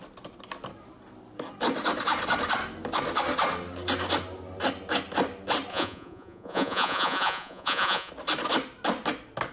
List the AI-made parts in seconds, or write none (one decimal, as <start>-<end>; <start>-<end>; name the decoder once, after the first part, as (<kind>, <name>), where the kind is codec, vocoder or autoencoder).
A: 5.7-8.1 (vocoder, Vocos)